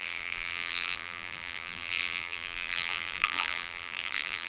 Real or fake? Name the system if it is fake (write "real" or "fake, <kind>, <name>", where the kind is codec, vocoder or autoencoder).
fake, vocoder, BigVGAN v2